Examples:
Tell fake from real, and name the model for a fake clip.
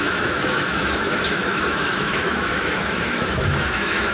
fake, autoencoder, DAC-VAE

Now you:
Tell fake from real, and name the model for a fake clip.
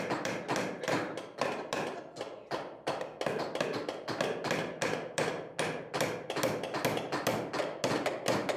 real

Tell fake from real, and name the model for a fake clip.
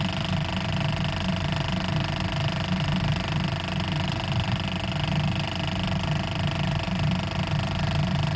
real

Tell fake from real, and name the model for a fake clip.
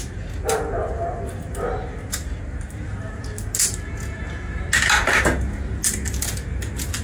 real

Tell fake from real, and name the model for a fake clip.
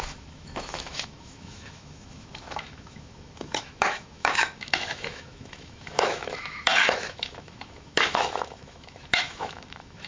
fake, autoencoder, DAC-VAE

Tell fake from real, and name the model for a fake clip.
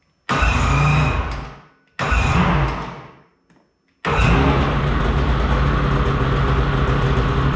real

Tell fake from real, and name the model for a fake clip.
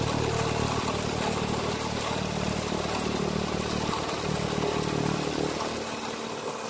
real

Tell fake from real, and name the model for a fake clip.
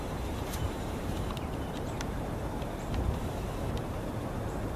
fake, vocoder, BigVGAN v2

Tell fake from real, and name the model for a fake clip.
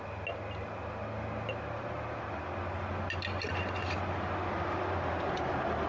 real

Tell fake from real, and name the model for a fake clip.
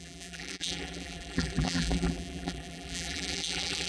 fake, vocoder, BigVGAN v2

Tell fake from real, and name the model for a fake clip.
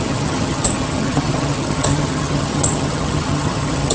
fake, vocoder, HiFi-GAN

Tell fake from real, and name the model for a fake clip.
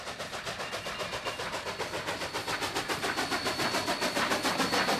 real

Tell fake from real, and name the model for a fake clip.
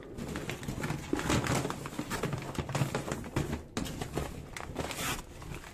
real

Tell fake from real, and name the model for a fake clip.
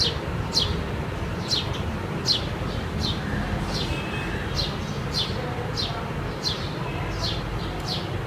real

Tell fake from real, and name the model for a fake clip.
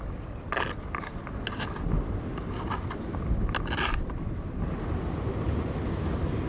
real